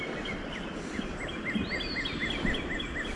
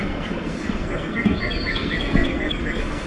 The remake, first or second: second